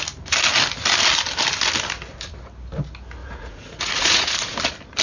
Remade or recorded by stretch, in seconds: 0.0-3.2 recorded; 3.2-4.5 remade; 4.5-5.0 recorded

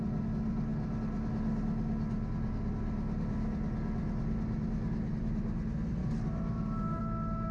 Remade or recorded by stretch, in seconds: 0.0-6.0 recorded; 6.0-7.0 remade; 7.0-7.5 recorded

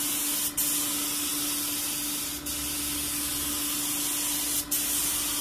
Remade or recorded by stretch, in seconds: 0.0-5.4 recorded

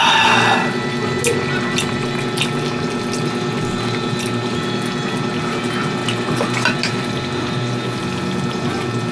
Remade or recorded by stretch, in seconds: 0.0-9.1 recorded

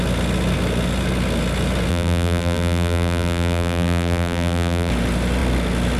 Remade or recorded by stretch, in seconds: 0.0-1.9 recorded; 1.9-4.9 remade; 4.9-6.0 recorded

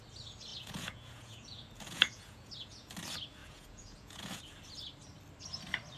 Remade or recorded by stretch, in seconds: 0.0-0.5 recorded; 0.5-2.9 remade; 2.9-3.4 recorded; 3.4-4.4 remade; 4.4-6.0 recorded